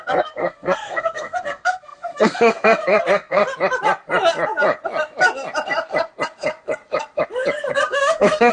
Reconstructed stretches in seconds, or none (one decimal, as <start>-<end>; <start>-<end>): 0.0-3.4; 7.7-8.5